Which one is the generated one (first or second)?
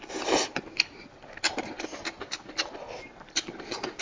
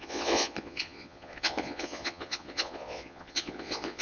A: second